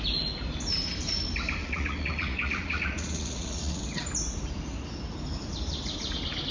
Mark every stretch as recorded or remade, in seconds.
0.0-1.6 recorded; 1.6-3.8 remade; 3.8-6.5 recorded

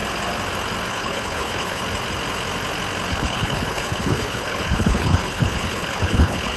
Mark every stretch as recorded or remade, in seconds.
0.0-0.9 recorded; 0.9-1.8 remade; 1.8-3.1 recorded; 3.1-6.6 remade

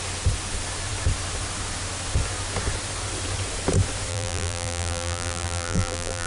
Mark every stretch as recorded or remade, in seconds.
0.0-4.1 recorded; 4.1-6.3 remade

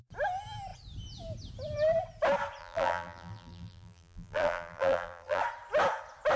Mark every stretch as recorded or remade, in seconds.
0.0-2.6 recorded; 2.6-5.4 remade; 5.4-6.4 recorded

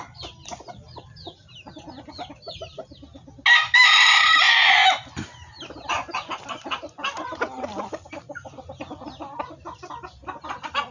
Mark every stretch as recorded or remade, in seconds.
0.0-10.9 recorded

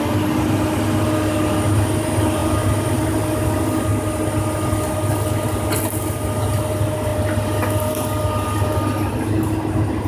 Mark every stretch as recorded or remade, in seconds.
0.0-10.1 recorded

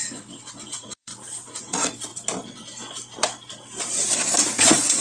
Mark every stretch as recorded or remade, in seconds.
0.0-1.1 remade; 1.1-1.6 recorded; 1.6-2.1 remade; 2.1-4.6 recorded; 4.6-5.0 remade